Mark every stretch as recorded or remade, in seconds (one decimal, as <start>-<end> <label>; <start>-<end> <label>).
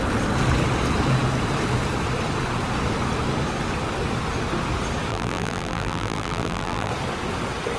0.0-5.1 recorded; 5.1-6.9 remade; 6.9-7.8 recorded